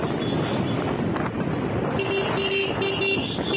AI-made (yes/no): no